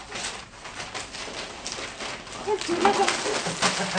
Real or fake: real